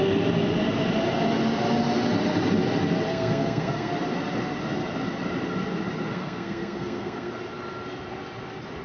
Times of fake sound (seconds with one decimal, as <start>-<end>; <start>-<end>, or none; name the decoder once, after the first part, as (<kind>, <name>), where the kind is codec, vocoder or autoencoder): 3.1-3.9 (codec, SNAC); 6.1-7.3